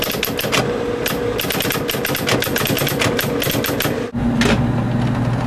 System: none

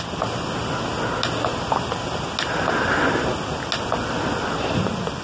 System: none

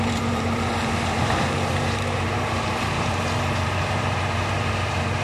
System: vocoder, BigVGAN v2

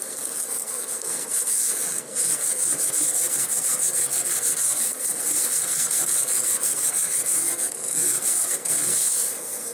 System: codec, SNAC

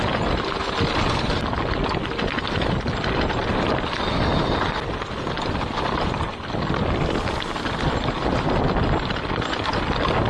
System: none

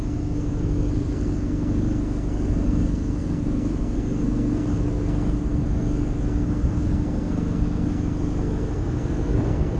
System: codec, SNAC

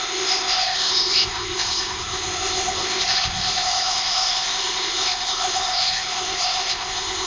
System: codec, ZipCodec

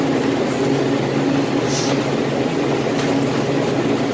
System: none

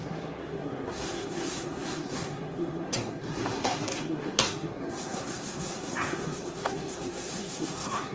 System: codec, SNAC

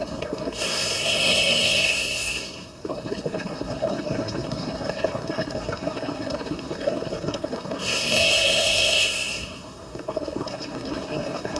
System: codec, SNAC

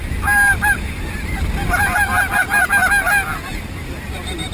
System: none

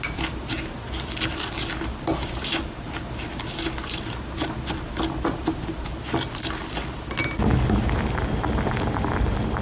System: none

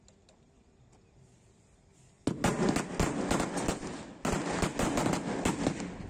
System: none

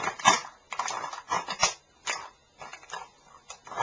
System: none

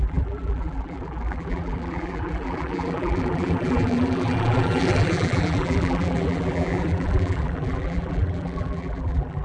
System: vocoder, BigVGAN v2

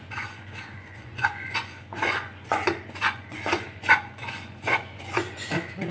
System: vocoder, Vocos